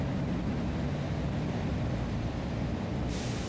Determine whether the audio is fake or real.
fake